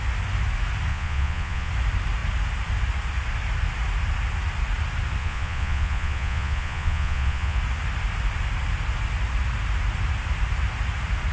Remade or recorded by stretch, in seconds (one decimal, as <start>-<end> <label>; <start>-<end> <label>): 0.0-0.9 recorded; 0.9-1.7 remade; 1.7-5.2 recorded; 5.2-7.6 remade; 7.6-11.3 recorded